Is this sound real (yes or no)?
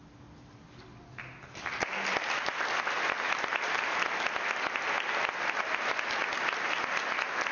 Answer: yes